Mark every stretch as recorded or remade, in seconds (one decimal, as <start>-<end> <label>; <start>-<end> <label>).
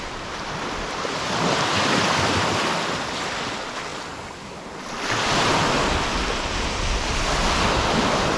0.0-8.4 recorded